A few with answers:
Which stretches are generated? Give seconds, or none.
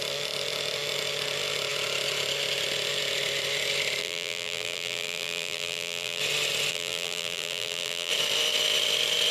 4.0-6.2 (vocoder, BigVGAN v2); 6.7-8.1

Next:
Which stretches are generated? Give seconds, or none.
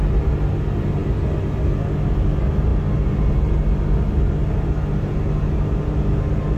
none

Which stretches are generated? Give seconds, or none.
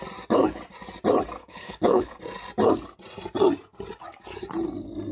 1.4-2.2 (codec, HILCodec)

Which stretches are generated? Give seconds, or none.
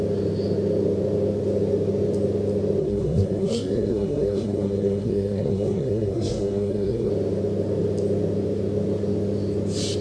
2.8-7.1 (codec, SNAC)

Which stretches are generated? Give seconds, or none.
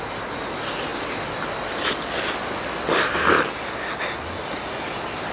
none